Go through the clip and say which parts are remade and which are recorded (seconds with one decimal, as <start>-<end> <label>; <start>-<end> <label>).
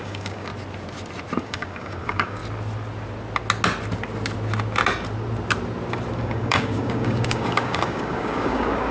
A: 0.0-0.5 remade; 0.5-1.4 recorded; 1.4-2.4 remade; 2.4-6.2 recorded; 6.2-8.9 remade